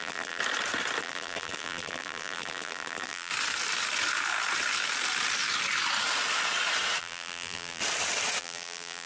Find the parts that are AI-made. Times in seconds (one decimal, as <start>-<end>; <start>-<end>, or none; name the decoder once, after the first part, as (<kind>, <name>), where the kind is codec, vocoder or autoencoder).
0.0-0.4 (vocoder, BigVGAN v2); 1.0-3.3; 7.0-7.8; 8.4-9.1